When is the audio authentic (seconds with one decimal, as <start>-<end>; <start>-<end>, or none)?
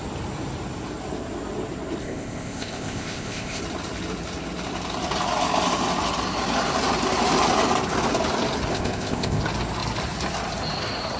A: 0.0-2.0; 3.6-8.7; 9.4-11.2